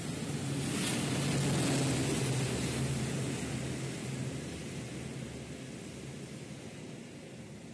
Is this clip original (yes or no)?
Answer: yes